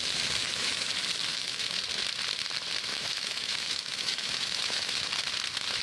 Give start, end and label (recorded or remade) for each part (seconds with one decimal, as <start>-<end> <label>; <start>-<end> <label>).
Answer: 0.0-0.4 recorded; 0.4-0.9 remade; 0.9-1.3 recorded; 1.3-1.8 remade; 1.8-2.9 recorded; 2.9-5.1 remade; 5.1-5.8 recorded